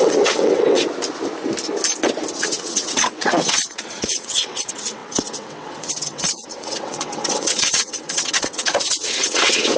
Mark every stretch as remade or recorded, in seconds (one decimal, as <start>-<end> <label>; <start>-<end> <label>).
0.0-0.8 remade; 0.8-2.4 recorded; 2.4-9.8 remade